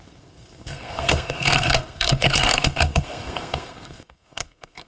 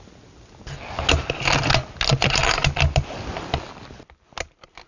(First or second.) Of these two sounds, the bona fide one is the second